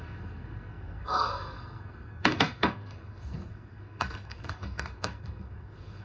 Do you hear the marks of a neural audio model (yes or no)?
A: yes